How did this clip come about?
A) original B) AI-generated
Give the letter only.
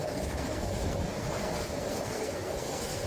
B